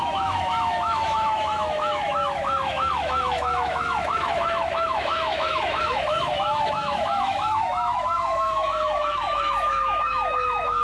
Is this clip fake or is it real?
fake